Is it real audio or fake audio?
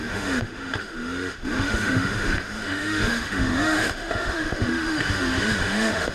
fake